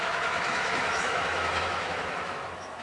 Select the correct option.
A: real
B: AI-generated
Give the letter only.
B